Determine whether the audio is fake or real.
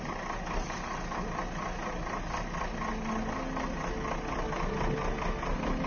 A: real